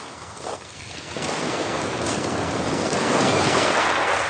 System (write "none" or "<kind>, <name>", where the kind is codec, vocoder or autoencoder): codec, SNAC